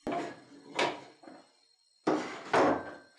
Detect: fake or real real